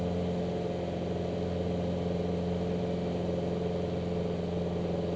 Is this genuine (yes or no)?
yes